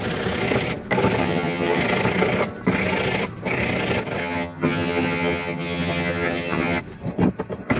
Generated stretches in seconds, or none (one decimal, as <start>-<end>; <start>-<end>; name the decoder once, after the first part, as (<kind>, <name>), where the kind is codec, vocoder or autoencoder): 1.2-1.8 (vocoder, HiFi-GAN); 4.2-6.8